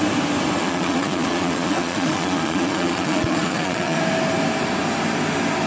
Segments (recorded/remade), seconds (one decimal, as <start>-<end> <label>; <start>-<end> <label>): 0.0-0.6 recorded; 0.6-4.0 remade; 4.0-5.7 recorded